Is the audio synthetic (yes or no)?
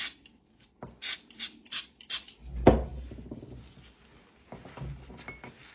no